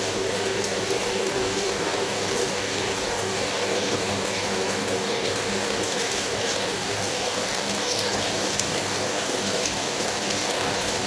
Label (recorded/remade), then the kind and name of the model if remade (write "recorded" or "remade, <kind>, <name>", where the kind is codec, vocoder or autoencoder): remade, codec, DAC